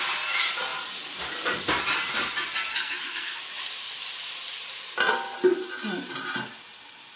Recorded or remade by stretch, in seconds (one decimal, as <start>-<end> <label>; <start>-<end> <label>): 0.0-2.7 recorded; 2.7-3.4 remade; 3.4-7.2 recorded